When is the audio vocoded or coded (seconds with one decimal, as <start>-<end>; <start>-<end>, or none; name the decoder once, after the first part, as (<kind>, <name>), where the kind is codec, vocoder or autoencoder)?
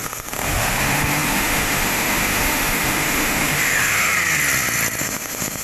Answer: 0.0-4.1 (autoencoder, DAC-VAE); 5.0-5.6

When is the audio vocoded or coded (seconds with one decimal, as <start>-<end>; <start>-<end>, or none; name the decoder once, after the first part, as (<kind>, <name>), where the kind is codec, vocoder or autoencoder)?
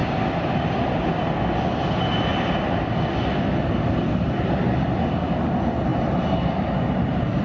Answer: 0.0-1.1 (vocoder, BigVGAN v2); 2.3-5.0; 5.9-6.5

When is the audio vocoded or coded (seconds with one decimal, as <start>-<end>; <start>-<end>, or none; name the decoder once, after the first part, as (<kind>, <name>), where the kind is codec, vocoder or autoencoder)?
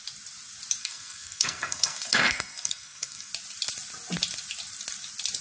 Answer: 0.8-3.3 (codec, SNAC)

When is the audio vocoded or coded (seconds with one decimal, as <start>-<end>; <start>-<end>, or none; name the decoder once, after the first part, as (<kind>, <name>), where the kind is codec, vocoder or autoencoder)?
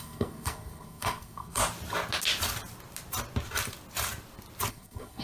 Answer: 0.0-1.6 (codec, SNAC); 4.7-5.2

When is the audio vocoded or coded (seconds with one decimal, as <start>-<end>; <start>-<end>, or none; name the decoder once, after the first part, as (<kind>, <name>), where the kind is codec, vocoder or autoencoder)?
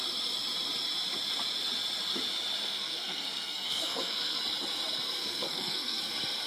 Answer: 2.6-4.4 (codec, SNAC); 5.2-6.0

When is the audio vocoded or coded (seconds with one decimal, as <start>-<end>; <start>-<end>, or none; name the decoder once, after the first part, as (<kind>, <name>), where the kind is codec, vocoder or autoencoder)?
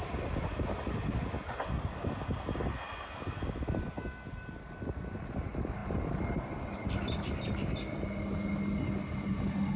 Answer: none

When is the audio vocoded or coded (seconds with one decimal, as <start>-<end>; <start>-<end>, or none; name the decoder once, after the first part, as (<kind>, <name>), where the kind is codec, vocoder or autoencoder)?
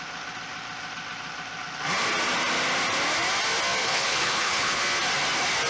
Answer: 3.8-4.8 (codec, HILCodec)